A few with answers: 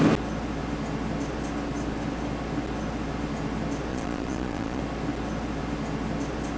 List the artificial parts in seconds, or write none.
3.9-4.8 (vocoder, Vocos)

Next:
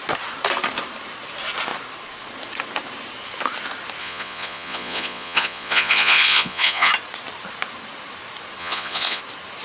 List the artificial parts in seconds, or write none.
4.0-6.9 (vocoder, Vocos); 8.6-9.2

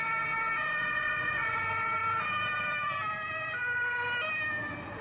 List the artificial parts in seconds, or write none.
0.8-1.6 (vocoder, Vocos)